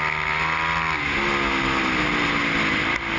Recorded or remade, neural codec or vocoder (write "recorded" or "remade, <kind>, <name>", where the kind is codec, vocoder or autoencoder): recorded